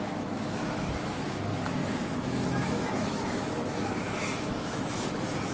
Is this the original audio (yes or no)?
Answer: no